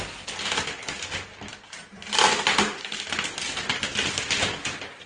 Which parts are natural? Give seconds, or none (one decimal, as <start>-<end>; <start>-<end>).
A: 0.0-5.1